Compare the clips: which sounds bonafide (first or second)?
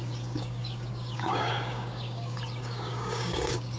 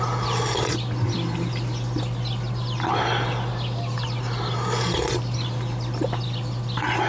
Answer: second